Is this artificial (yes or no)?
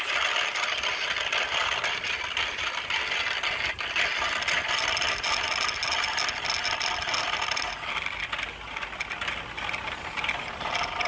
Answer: no